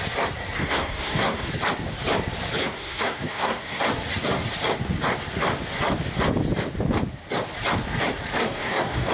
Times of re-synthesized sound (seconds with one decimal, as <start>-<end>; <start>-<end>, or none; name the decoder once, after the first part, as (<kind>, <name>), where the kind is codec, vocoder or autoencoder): 0.6-1.5 (codec, SNAC); 2.6-3.8; 8.4-9.1